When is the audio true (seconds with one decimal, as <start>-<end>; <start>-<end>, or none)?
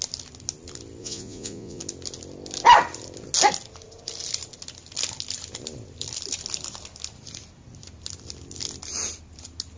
0.0-1.0; 1.8-9.8